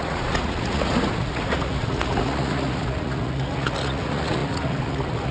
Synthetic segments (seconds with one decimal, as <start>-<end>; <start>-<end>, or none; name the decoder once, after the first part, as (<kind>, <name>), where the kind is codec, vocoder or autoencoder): 0.0-5.3 (vocoder, Vocos)

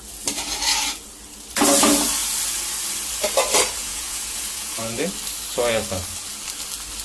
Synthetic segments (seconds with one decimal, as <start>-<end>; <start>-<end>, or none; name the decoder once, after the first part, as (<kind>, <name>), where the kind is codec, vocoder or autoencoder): 3.8-5.0 (vocoder, Vocos)

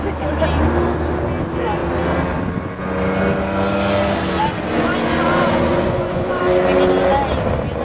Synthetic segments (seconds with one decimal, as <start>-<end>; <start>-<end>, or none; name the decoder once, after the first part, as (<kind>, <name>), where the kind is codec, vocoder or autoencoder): 4.7-6.4 (vocoder, Vocos)

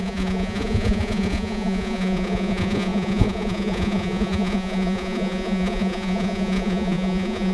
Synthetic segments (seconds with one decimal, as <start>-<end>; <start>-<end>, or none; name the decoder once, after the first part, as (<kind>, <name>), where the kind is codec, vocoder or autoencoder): 0.0-7.5 (vocoder, Vocos)

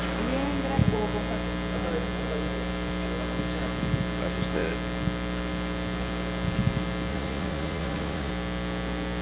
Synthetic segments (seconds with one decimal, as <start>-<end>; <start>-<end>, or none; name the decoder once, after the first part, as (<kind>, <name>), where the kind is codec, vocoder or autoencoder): 7.1-8.3 (vocoder, Vocos)